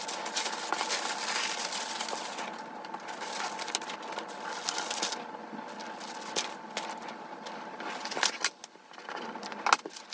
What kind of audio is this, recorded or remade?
recorded